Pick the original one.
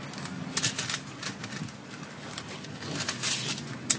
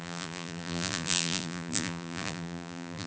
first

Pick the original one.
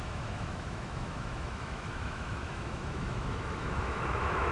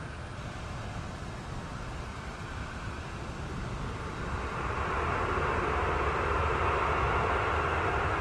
second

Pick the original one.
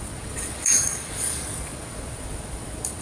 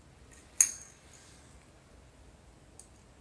second